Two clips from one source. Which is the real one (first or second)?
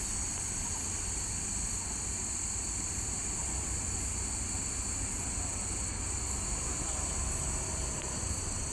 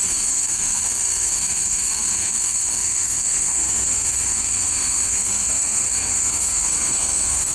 first